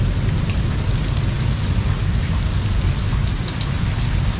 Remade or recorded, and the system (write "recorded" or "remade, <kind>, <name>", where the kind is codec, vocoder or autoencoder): recorded